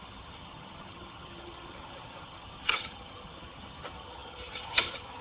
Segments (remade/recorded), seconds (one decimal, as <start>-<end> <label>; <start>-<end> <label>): 0.0-5.2 remade